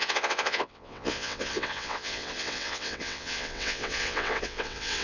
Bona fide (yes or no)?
no